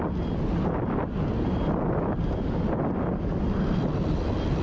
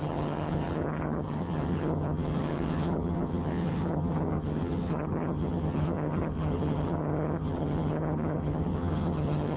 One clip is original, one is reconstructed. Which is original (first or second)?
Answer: first